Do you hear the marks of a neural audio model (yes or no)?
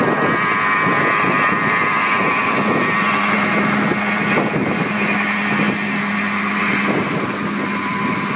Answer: no